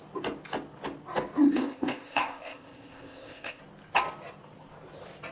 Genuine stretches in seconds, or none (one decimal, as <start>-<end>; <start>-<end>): 0.0-1.5; 3.6-5.3